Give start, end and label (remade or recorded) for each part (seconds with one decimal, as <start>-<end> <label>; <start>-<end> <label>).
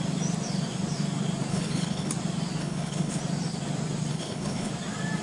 0.0-1.5 recorded; 1.5-2.1 remade; 2.1-2.6 recorded; 2.6-3.2 remade; 3.2-4.1 recorded; 4.1-4.7 remade; 4.7-5.2 recorded